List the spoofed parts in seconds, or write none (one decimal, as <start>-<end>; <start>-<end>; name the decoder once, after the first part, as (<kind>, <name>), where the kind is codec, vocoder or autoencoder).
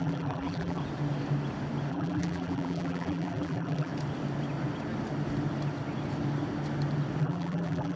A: 0.0-0.8 (vocoder, BigVGAN v2); 1.9-3.9; 7.2-8.0